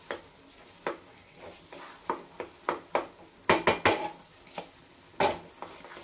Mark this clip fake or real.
real